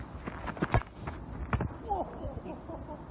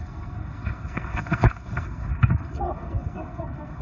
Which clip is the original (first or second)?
first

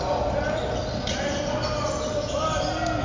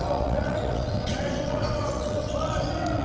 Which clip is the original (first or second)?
first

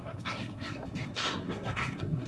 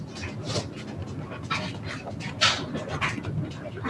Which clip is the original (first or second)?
second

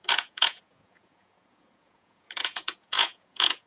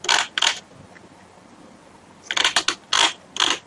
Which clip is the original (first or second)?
second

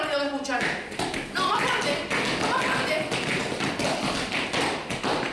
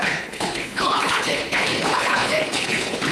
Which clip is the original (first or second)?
first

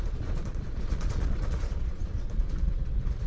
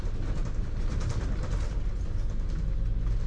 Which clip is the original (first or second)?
second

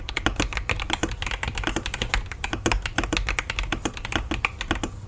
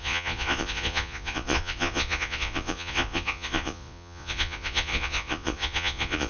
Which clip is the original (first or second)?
first